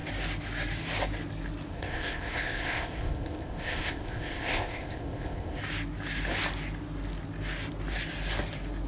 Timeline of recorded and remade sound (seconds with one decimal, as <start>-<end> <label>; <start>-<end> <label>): 0.0-1.7 recorded; 1.7-5.6 remade; 5.6-8.9 recorded